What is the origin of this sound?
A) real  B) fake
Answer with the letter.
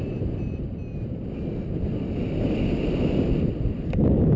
A